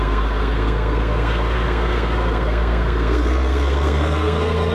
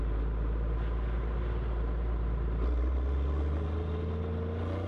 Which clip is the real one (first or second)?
second